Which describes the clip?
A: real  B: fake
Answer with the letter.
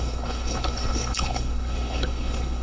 B